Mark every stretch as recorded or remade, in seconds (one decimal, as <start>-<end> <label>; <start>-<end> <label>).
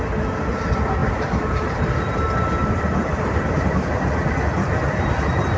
0.0-1.0 recorded; 1.0-2.2 remade; 2.2-2.6 recorded; 2.6-4.2 remade; 4.2-5.6 recorded